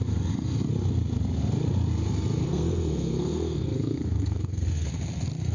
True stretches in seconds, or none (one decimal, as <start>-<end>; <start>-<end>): 0.0-2.4; 4.9-5.5